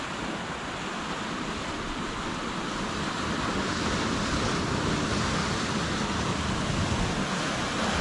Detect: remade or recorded recorded